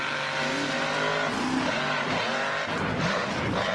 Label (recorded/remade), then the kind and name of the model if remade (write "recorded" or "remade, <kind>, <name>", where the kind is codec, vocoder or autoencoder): recorded